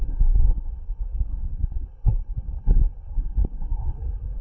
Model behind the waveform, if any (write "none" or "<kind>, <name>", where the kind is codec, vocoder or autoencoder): codec, SNAC